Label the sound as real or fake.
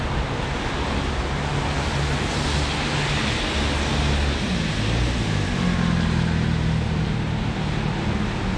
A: real